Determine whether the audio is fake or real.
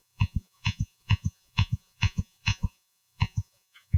fake